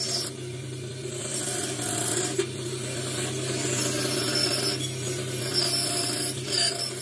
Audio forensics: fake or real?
real